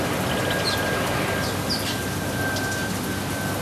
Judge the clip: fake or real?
real